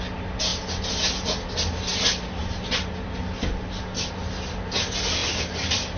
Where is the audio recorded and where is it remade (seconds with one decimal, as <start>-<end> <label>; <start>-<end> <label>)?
0.0-6.0 recorded